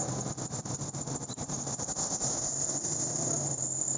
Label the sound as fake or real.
real